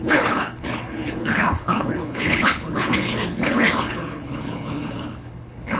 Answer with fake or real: fake